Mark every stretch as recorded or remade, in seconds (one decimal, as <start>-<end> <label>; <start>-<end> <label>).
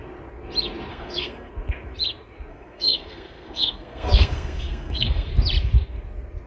0.0-0.9 recorded; 0.9-1.5 remade; 1.5-2.5 recorded; 2.5-5.3 remade; 5.3-6.5 recorded